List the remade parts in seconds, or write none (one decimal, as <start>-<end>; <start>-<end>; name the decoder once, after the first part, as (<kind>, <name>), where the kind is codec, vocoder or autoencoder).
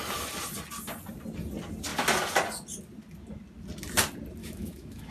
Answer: 4.4-5.1 (autoencoder, DAC-VAE)